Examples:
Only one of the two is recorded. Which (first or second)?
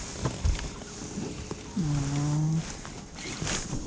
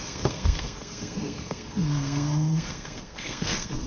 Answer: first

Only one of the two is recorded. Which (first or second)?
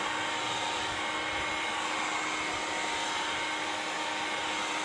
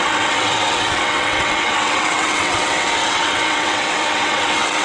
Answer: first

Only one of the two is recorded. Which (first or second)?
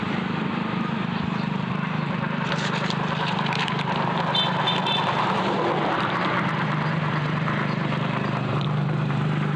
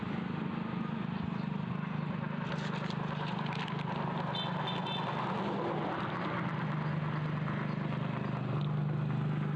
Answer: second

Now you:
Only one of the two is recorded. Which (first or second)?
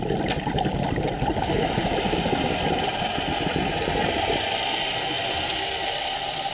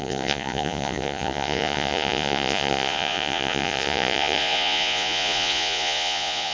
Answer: first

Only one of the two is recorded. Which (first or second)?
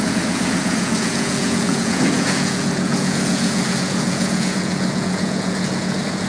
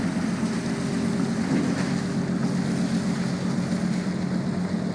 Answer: second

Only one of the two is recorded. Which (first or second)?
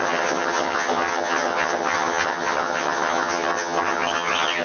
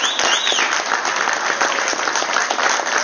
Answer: second